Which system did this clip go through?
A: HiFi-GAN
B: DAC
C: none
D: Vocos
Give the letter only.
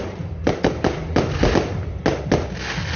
C